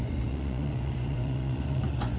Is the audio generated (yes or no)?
yes